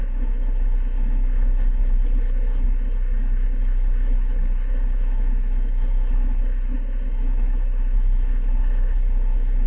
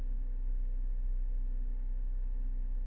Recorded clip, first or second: second